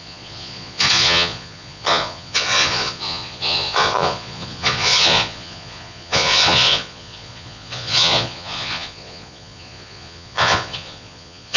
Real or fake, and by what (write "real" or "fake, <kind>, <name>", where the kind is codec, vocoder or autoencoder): fake, vocoder, Vocos